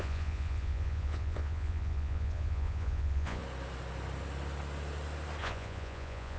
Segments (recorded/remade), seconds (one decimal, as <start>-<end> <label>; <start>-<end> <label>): 0.0-3.4 remade; 3.4-5.4 recorded; 5.4-6.4 remade